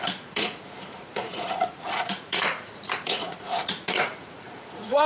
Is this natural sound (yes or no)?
no